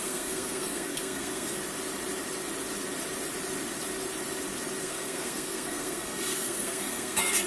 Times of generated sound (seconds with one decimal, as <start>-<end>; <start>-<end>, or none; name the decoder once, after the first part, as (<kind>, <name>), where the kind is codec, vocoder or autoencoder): 0.0-1.6 (codec, SNAC); 4.8-7.5